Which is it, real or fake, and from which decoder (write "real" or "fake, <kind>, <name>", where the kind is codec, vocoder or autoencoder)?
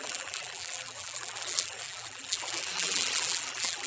fake, vocoder, BigVGAN v2